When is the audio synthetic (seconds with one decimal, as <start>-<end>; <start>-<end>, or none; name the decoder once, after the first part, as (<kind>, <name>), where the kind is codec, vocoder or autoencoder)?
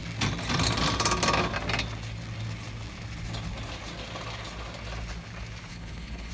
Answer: 5.7-6.3 (codec, HILCodec)